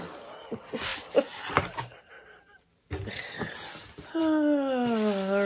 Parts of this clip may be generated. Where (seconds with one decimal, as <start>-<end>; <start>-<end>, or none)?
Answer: none